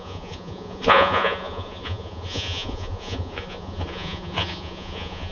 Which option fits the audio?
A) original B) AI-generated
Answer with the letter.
B